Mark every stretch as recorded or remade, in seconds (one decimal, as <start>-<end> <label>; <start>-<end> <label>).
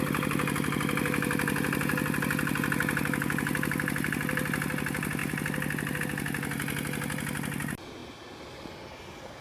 0.0-9.4 recorded